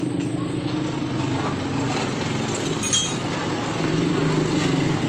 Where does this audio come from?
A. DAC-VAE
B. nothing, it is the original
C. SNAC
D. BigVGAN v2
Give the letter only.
B